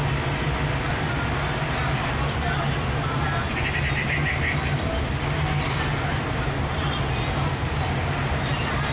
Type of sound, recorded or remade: recorded